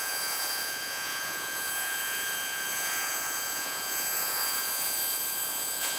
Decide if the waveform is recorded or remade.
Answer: remade